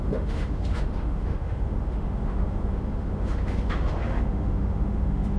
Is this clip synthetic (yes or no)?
yes